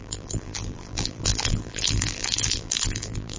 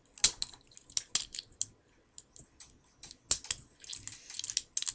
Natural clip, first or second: second